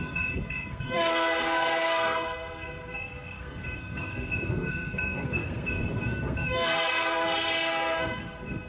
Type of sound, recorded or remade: remade